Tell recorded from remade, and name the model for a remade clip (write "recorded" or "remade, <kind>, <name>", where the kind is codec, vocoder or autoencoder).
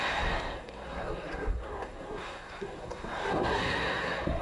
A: remade, codec, SNAC